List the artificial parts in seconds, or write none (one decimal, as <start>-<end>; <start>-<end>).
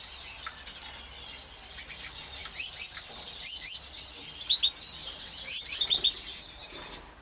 5.0-5.6